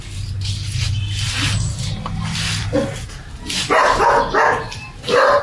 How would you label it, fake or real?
real